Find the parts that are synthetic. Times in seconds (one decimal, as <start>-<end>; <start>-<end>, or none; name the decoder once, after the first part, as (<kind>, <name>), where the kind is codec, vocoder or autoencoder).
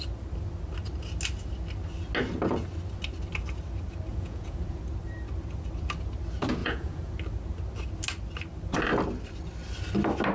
4.1-4.8 (vocoder, Vocos); 6.6-7.1